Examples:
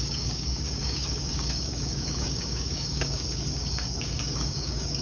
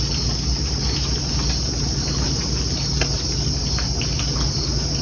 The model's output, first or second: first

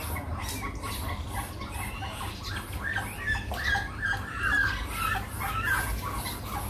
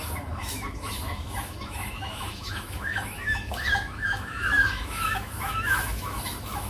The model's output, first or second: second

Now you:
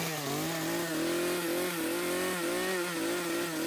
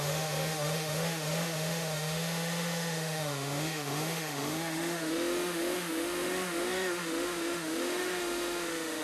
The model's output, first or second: second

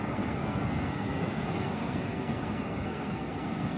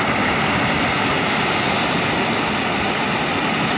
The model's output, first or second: first